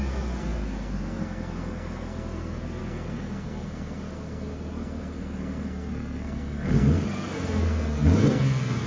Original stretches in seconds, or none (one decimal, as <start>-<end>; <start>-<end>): none